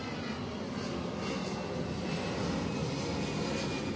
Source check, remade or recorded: recorded